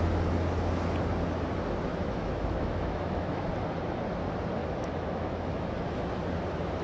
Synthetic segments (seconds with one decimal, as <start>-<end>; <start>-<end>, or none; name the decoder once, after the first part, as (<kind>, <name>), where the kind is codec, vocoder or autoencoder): 1.9-3.4 (autoencoder, DAC-VAE); 4.6-6.1